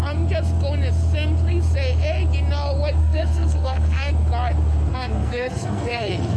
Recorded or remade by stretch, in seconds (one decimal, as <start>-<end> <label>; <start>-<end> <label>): 0.0-3.0 recorded; 3.0-4.1 remade; 4.1-4.9 recorded; 4.9-6.4 remade